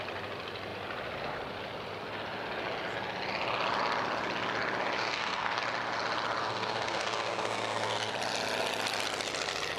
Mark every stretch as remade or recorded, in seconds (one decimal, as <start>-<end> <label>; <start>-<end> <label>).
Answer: 0.0-5.0 recorded; 5.0-5.6 remade; 5.6-6.4 recorded; 6.4-8.1 remade; 8.1-9.8 recorded